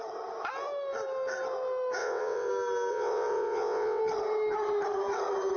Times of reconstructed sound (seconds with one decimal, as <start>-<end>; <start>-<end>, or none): 2.0-2.5; 2.9-4.0